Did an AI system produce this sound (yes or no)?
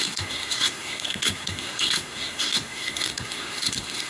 yes